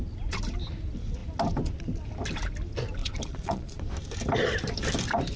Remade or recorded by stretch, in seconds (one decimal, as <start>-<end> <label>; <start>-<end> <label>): 0.0-3.0 recorded; 3.0-3.8 remade; 3.8-5.4 recorded